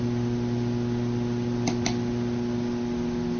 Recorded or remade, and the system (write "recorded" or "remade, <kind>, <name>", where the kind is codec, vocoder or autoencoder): recorded